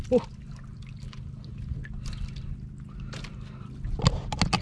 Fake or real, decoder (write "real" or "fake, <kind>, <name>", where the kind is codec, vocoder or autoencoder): real